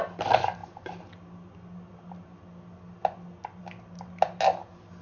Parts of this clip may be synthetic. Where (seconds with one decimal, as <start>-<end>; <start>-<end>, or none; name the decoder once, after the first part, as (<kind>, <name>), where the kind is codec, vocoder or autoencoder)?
none